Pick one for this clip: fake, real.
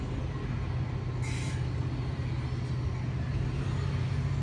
real